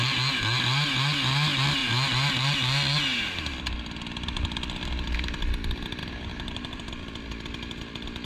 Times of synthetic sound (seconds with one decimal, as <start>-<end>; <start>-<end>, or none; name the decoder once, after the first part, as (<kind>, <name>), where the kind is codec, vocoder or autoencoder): 6.0-6.9 (vocoder, BigVGAN v2)